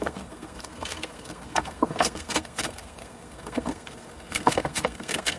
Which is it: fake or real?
fake